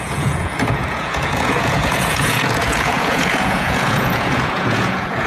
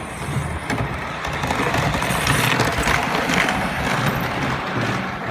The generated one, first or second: first